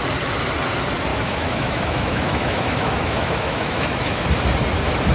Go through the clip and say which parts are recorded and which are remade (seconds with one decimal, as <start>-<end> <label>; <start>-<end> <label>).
0.0-1.1 recorded; 1.1-4.2 remade; 4.2-5.1 recorded